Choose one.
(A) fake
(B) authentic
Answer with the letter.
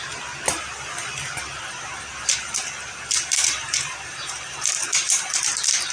A